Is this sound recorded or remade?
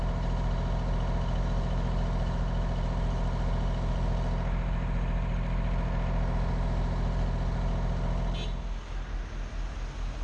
recorded